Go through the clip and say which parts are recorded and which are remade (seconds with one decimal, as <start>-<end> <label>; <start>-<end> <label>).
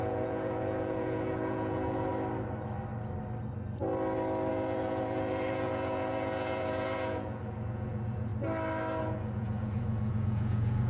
0.0-2.1 remade; 2.1-4.5 recorded; 4.5-8.3 remade; 8.3-9.0 recorded; 9.0-10.9 remade